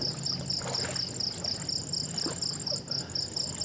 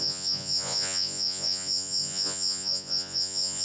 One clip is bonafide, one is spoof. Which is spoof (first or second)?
second